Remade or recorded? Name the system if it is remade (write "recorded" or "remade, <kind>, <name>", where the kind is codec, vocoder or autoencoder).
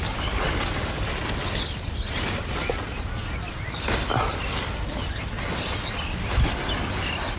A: recorded